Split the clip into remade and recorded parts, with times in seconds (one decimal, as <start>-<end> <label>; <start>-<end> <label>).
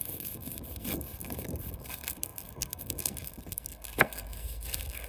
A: 0.0-5.1 remade